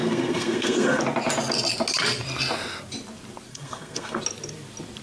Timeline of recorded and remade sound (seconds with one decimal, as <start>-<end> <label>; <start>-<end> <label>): 0.0-1.0 remade; 1.0-3.5 recorded; 3.5-4.2 remade; 4.2-5.0 recorded